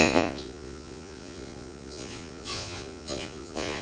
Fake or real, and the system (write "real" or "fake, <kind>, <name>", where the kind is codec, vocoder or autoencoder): fake, vocoder, Vocos